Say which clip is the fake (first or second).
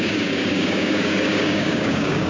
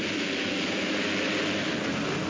first